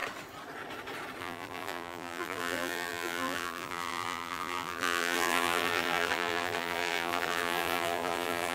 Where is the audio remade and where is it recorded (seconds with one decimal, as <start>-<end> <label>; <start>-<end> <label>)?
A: 0.0-1.2 recorded; 1.2-8.5 remade